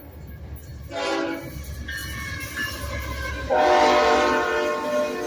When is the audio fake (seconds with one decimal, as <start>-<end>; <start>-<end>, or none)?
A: none

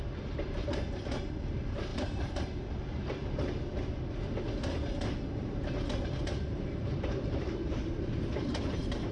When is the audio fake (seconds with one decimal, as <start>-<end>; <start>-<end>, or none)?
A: 1.9-2.5; 6.8-9.1

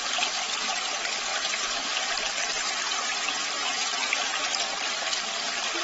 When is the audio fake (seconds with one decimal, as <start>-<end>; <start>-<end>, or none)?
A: 1.3-4.1

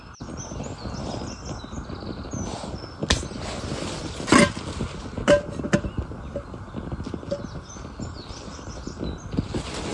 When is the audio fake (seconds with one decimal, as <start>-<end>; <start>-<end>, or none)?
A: none